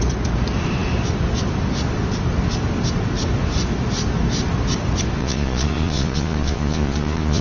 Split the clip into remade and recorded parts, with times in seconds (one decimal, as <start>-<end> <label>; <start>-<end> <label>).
0.0-5.2 recorded; 5.2-7.4 remade